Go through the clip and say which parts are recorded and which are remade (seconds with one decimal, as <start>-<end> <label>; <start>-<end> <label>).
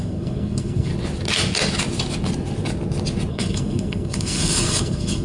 0.0-0.9 remade; 0.9-3.3 recorded; 3.3-5.2 remade